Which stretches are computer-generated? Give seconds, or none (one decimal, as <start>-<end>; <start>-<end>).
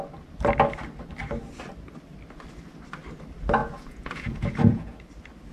3.6-5.0